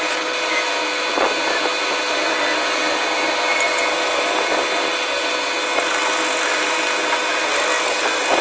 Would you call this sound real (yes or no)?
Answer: yes